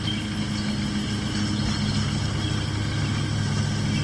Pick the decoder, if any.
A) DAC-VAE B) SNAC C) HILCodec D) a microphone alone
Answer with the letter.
D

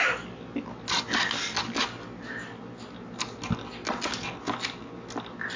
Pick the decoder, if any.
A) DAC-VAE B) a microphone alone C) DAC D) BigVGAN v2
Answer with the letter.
B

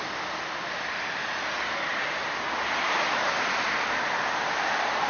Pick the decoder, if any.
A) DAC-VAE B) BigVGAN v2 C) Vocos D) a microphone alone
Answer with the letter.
D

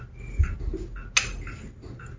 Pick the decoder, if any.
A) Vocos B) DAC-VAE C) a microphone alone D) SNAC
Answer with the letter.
C